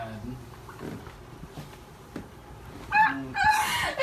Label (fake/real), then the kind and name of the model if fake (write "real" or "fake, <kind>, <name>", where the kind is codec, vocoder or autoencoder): real